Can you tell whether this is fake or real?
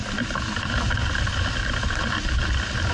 real